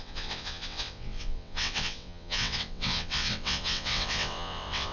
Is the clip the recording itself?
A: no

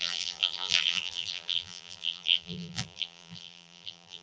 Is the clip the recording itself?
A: no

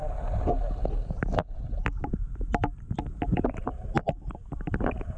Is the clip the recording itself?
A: yes